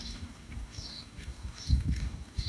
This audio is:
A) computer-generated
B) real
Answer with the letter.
A